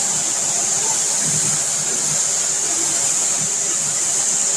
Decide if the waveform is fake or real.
real